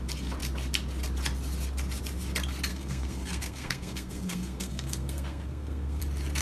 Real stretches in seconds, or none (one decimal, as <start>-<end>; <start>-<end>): 0.0-2.7; 6.0-6.4